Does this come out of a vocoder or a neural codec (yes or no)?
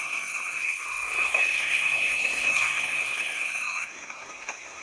yes